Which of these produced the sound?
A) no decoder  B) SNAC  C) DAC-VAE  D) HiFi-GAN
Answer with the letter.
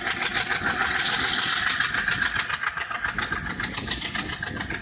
A